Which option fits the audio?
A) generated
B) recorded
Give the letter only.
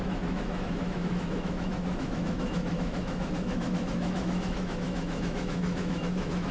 A